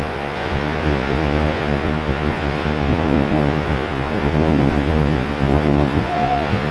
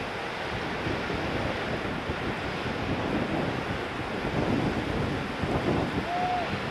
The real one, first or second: second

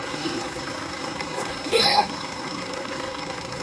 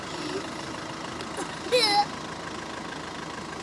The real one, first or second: second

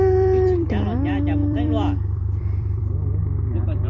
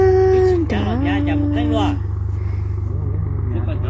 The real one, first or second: second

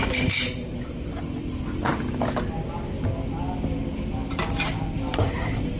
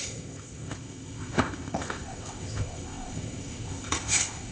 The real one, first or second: first